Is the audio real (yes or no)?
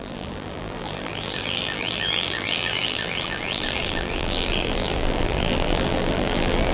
no